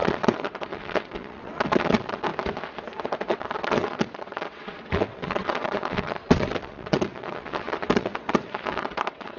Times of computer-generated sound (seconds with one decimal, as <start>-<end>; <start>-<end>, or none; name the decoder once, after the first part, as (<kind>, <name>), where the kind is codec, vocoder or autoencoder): 0.0-2.3 (vocoder, WaveNeXt); 3.0-9.4